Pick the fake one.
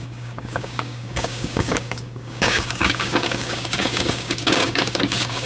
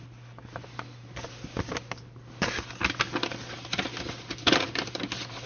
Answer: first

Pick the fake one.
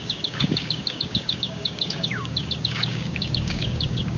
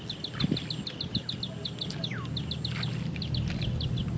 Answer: first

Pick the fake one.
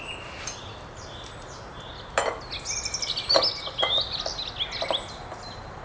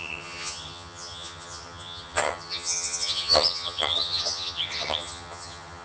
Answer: second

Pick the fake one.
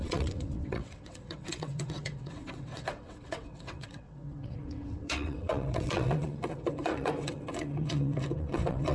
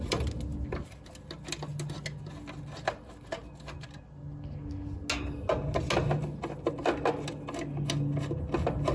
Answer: first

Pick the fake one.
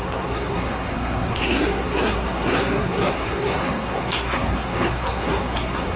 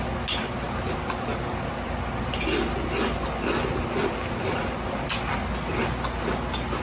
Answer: first